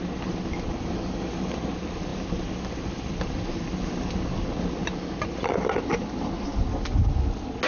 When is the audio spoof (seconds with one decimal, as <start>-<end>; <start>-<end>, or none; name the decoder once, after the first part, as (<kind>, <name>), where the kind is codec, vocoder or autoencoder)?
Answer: none